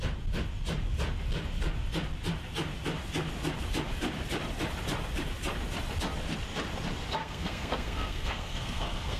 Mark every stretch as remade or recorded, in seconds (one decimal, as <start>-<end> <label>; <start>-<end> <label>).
0.0-7.2 recorded; 7.2-9.2 remade

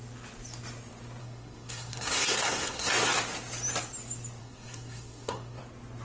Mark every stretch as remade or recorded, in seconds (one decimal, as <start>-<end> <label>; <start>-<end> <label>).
0.0-1.2 recorded; 1.2-2.9 remade; 2.9-4.4 recorded; 4.4-5.6 remade; 5.6-6.0 recorded

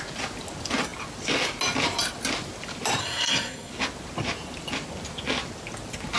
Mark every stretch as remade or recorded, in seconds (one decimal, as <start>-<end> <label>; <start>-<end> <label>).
0.0-3.0 recorded; 3.0-3.7 remade; 3.7-6.2 recorded

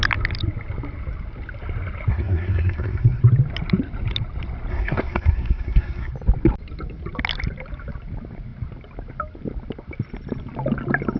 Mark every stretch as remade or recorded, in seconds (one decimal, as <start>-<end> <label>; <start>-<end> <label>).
0.0-2.1 recorded; 2.1-3.2 remade; 3.2-4.7 recorded; 4.7-6.1 remade; 6.1-11.2 recorded

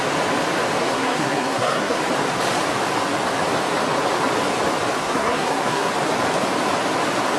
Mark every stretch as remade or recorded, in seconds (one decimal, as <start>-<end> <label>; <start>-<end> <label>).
0.0-0.8 recorded; 0.8-2.0 remade; 2.0-5.0 recorded; 5.0-5.9 remade; 5.9-7.4 recorded

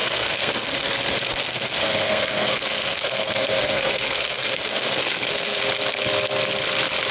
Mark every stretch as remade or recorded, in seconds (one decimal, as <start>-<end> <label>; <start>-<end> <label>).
0.0-0.9 remade; 0.9-1.4 recorded; 1.4-5.6 remade; 5.6-7.1 recorded

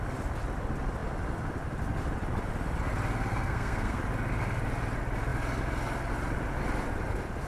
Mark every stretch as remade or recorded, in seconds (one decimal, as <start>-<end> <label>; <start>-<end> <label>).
0.0-3.3 recorded; 3.3-4.0 remade; 4.0-7.5 recorded

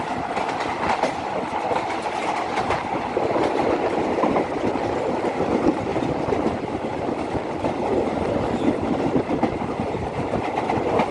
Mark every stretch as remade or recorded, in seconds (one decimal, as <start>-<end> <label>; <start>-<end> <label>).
0.0-11.1 recorded